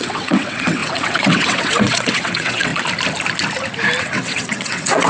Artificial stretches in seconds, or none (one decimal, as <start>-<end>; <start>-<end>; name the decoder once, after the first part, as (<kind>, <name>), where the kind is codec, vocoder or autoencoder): 0.0-2.7 (vocoder, WaveNeXt); 4.0-5.1